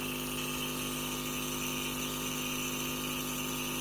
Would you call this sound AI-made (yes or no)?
no